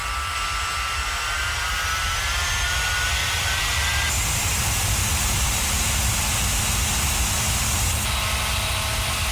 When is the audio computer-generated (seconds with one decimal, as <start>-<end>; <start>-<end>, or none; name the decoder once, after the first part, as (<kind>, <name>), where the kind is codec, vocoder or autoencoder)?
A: 3.2-4.1 (vocoder, BigVGAN v2); 5.0-6.6

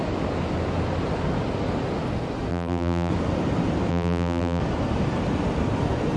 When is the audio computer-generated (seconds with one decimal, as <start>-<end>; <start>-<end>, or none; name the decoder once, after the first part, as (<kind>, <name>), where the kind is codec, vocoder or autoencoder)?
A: 2.5-3.1 (vocoder, BigVGAN v2); 3.9-4.6

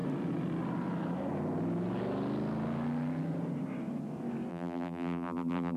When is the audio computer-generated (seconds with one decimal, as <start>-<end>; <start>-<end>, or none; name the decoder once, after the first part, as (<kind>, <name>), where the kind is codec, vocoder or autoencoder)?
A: 4.5-5.8 (vocoder, BigVGAN v2)

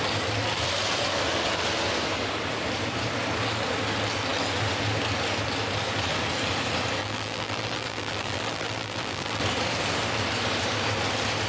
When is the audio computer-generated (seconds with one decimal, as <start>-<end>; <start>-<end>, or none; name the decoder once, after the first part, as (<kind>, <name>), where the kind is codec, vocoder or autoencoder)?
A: 7.0-9.4 (vocoder, BigVGAN v2)